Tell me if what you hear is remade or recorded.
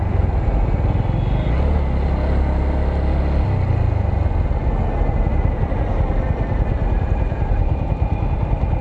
recorded